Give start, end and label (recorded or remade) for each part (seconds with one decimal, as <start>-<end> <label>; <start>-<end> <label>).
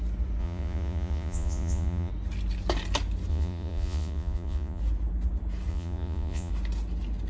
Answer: 0.0-0.4 recorded; 0.4-2.1 remade; 2.1-3.3 recorded; 3.3-4.8 remade; 4.8-5.7 recorded; 5.7-6.5 remade; 6.5-7.3 recorded